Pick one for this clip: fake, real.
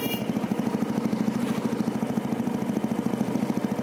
real